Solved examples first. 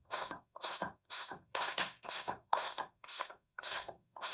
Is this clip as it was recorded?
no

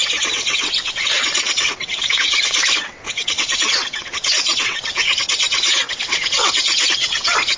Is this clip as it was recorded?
no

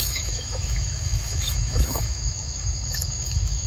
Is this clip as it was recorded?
no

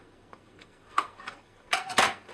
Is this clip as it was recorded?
no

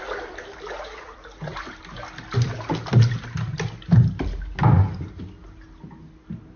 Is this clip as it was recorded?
yes